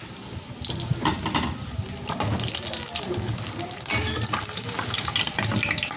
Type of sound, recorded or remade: recorded